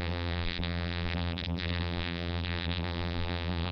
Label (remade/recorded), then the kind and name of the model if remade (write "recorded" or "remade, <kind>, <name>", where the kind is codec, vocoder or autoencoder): remade, vocoder, BigVGAN v2